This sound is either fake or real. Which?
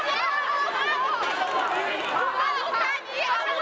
real